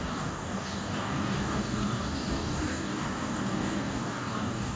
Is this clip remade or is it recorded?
remade